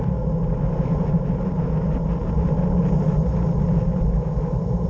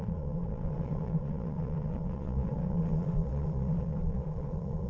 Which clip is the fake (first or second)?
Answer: second